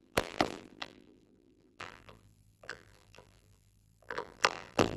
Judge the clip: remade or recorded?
remade